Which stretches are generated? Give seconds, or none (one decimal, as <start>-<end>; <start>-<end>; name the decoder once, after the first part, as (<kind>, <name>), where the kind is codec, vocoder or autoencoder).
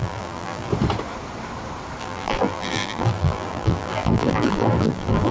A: 0.0-0.7 (vocoder, BigVGAN v2); 2.0-5.3